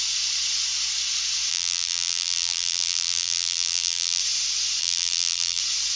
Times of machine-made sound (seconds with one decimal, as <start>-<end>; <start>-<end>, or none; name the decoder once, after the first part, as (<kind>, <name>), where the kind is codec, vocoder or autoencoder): 1.5-4.2 (vocoder, BigVGAN v2); 4.8-5.6